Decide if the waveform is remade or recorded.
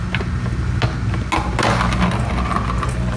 recorded